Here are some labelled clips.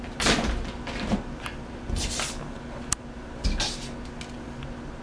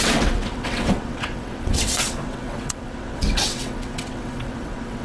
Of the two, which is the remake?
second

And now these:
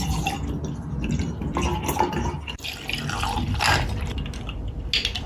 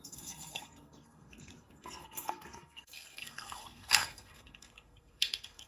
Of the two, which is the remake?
second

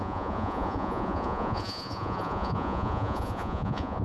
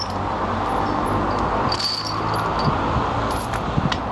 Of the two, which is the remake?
first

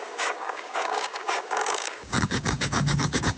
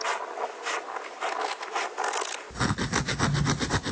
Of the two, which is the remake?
first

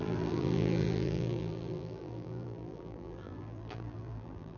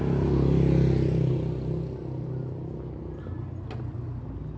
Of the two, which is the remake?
first